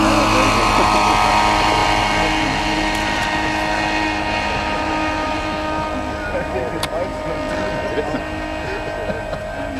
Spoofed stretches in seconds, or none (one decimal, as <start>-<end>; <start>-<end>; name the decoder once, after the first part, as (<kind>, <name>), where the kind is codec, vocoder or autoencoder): none